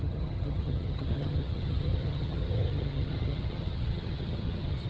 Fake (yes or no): yes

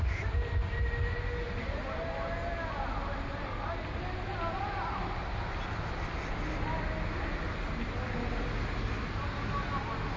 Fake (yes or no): no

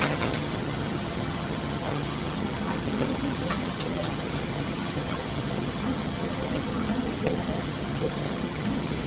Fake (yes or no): yes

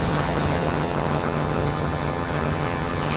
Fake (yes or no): yes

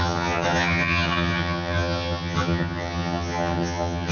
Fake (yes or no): yes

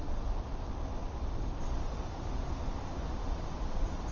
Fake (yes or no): no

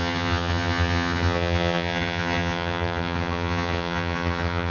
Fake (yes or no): yes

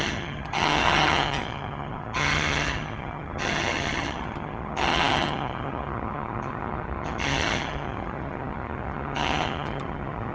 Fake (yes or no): yes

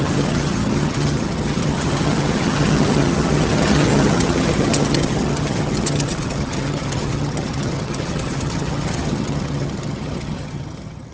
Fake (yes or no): yes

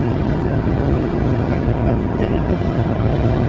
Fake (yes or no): yes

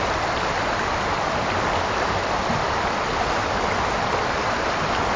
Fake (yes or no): no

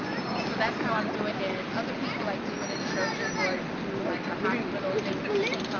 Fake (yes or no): no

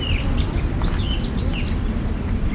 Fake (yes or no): no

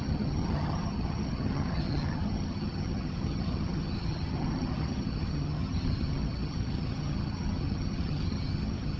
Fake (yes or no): yes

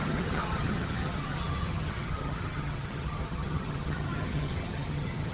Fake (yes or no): yes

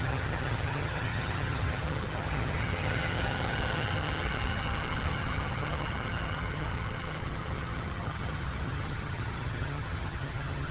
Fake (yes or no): yes